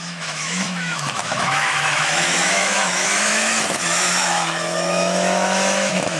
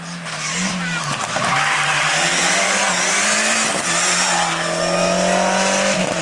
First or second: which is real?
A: second